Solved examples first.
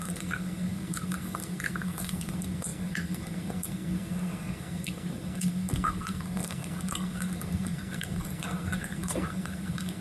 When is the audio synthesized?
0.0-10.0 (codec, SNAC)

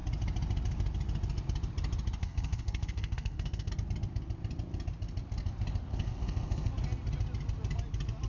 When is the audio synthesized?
2.2-3.7 (codec, SNAC); 5.9-6.7